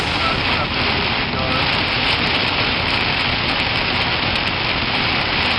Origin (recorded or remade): recorded